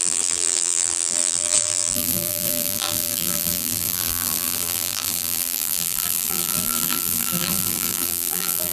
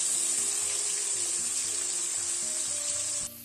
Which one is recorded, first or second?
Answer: second